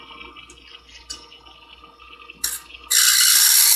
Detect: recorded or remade recorded